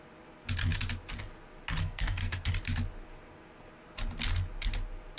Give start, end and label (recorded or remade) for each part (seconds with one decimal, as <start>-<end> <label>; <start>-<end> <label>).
0.0-1.8 recorded; 1.8-2.5 remade; 2.5-5.2 recorded

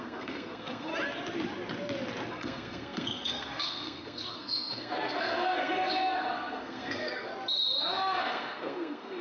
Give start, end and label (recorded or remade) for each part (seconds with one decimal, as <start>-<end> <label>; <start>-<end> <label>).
0.0-0.9 remade; 0.9-2.3 recorded; 2.3-7.3 remade; 7.3-7.9 recorded; 7.9-9.2 remade

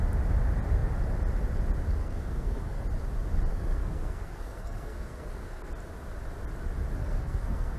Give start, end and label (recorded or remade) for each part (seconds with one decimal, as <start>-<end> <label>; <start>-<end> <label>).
0.0-2.0 recorded; 2.0-2.8 remade; 2.8-3.5 recorded; 3.5-5.7 remade; 5.7-7.0 recorded; 7.0-7.8 remade

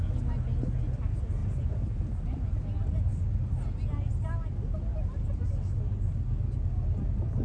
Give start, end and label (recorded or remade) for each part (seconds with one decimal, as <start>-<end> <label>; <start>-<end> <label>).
0.0-7.4 recorded

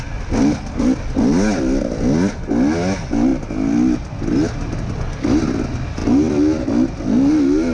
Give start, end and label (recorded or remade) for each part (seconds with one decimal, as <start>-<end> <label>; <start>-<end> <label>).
0.0-7.7 recorded

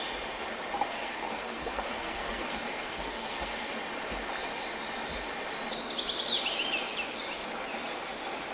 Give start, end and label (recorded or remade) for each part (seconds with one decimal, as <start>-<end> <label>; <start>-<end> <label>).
0.0-0.9 recorded; 0.9-3.7 remade; 3.7-8.5 recorded

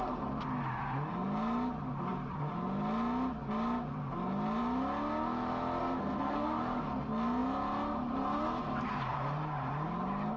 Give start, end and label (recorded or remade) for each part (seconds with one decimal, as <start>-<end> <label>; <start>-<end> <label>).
0.0-5.8 recorded; 5.8-6.6 remade; 6.6-10.4 recorded